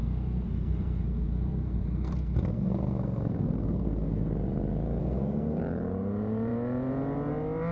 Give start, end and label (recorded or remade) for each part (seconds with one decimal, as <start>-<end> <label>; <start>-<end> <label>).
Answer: 0.0-4.3 remade; 4.3-5.0 recorded; 5.0-5.6 remade; 5.6-7.7 recorded